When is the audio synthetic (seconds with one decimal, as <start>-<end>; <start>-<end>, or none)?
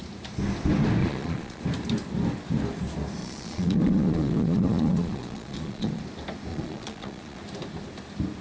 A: 1.0-1.6; 3.2-6.0; 6.5-7.4